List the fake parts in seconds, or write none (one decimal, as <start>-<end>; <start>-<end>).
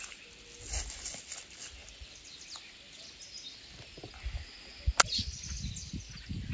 none